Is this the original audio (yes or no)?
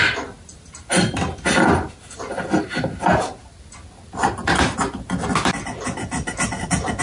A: yes